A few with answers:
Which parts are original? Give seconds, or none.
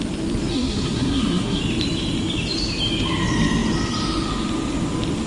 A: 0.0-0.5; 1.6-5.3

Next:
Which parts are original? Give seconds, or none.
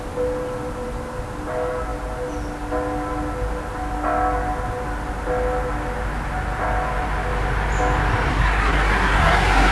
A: 0.0-8.3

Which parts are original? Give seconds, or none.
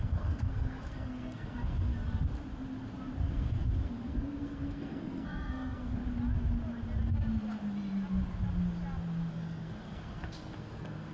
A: 1.9-3.2; 6.0-9.3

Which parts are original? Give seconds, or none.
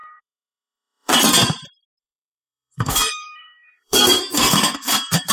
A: 1.1-2.0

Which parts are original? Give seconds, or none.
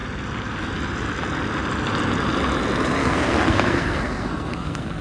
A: 0.0-3.0